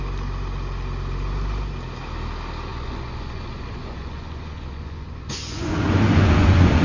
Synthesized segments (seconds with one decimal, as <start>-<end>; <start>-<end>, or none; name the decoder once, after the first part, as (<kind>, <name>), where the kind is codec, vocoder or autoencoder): 2.7-6.8 (vocoder, Vocos)